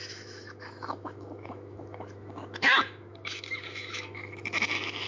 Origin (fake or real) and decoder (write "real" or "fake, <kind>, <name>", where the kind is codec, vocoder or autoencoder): fake, autoencoder, DAC-VAE